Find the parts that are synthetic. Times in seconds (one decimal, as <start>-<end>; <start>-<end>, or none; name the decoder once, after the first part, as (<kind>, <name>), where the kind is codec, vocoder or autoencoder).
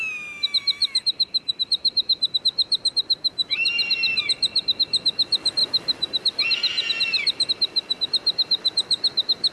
none